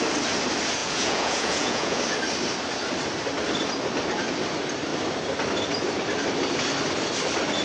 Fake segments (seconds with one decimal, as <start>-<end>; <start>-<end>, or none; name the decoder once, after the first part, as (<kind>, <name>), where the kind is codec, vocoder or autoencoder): 0.8-2.0 (vocoder, Vocos)